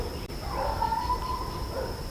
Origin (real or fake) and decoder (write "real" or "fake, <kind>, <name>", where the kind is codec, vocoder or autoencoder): fake, vocoder, BigVGAN v2